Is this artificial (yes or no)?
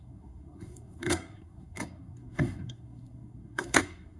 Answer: yes